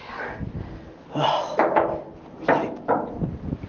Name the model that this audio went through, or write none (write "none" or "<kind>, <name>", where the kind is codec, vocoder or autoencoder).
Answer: none